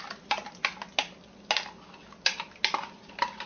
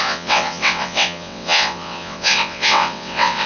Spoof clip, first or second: second